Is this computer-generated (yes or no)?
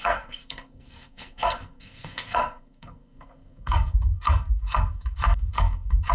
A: yes